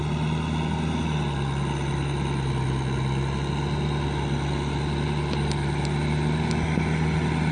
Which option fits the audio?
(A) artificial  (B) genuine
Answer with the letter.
B